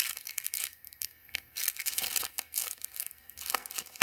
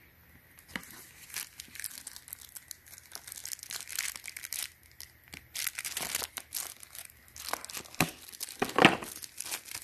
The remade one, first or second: first